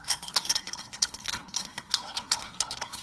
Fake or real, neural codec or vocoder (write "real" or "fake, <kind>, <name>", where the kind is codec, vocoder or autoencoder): fake, codec, SNAC